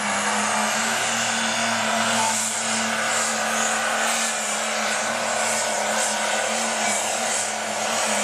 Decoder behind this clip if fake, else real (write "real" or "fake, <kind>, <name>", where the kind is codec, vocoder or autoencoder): real